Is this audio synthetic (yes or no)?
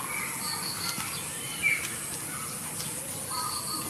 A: no